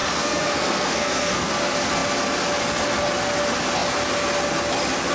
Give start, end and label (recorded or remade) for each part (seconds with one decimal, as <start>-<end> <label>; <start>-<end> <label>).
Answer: 0.0-1.5 remade; 1.5-5.1 recorded